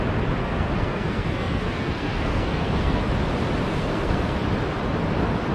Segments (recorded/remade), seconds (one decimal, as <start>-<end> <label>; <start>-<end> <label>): 0.0-0.4 recorded; 0.4-3.1 remade; 3.1-3.7 recorded; 3.7-4.4 remade; 4.4-5.5 recorded